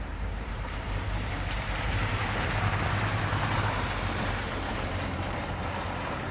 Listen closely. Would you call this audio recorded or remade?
remade